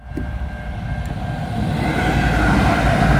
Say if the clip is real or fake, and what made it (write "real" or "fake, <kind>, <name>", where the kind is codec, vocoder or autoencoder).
real